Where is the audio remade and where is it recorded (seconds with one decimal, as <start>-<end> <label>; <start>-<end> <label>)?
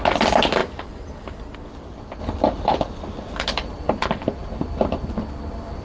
0.0-5.8 recorded